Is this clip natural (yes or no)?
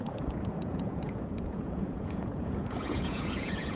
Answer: no